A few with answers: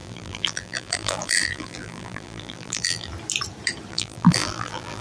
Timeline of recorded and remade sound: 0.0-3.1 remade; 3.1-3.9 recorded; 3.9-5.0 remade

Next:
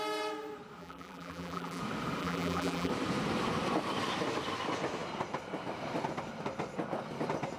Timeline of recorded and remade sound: 0.0-0.8 recorded; 0.8-1.8 remade; 1.8-2.2 recorded; 2.2-2.9 remade; 2.9-7.6 recorded

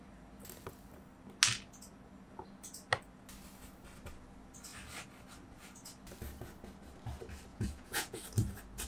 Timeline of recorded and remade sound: 0.0-7.5 recorded; 7.5-8.2 remade; 8.2-8.9 recorded

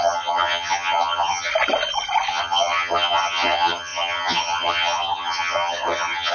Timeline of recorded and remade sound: 0.0-1.5 remade; 1.5-2.3 recorded; 2.3-6.3 remade

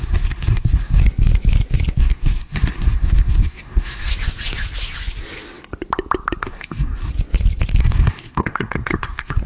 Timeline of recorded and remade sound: 0.0-1.0 remade; 1.0-2.0 recorded; 2.0-4.1 remade; 4.1-6.4 recorded; 6.4-7.1 remade; 7.1-7.8 recorded; 7.8-9.5 remade

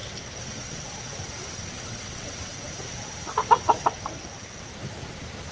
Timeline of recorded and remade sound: 0.0-1.7 recorded; 1.7-2.5 remade; 2.5-5.5 recorded

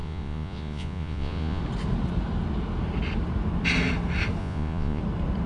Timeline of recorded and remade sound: 0.0-1.6 remade; 1.6-4.4 recorded; 4.4-5.0 remade; 5.0-5.5 recorded

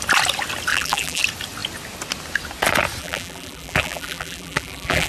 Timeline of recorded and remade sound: 0.0-0.7 recorded; 0.7-1.2 remade; 1.2-3.0 recorded; 3.0-5.1 remade